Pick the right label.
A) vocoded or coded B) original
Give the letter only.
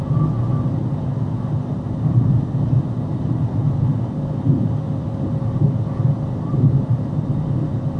B